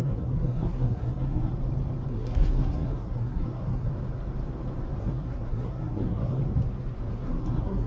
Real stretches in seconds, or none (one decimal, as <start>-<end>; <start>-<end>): 1.5-2.1; 3.9-5.0; 6.4-7.1